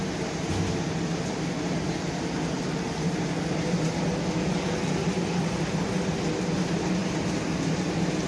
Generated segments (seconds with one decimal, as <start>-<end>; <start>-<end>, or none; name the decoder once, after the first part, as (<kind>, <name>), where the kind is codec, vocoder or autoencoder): none